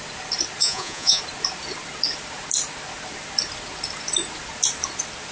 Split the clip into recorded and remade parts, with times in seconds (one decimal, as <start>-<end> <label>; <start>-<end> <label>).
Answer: 0.0-0.6 recorded; 0.6-1.2 remade; 1.2-5.3 recorded